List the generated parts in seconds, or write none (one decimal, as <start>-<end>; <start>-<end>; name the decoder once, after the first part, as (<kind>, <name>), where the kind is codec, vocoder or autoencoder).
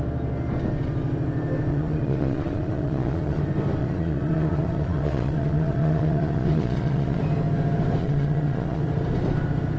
1.7-3.4 (vocoder, Vocos); 3.8-7.2; 8.0-8.8